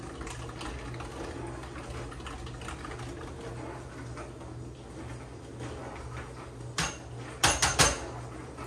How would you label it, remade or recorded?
recorded